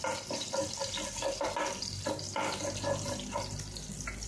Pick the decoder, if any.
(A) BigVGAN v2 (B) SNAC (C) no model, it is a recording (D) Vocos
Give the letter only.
C